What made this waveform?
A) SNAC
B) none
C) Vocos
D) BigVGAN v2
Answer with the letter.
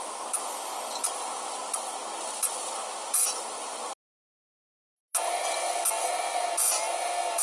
B